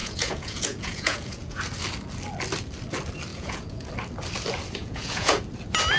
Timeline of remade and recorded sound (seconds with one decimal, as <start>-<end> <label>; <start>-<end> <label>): 0.0-1.6 remade; 1.6-3.3 recorded; 3.3-3.9 remade; 3.9-4.8 recorded; 4.8-5.4 remade; 5.4-6.0 recorded